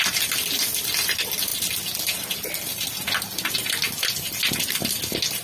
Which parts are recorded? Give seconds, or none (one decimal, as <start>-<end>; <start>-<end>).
0.0-5.4